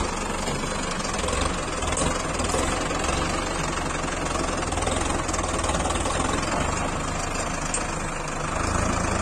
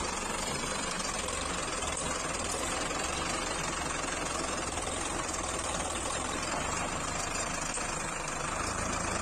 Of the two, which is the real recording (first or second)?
first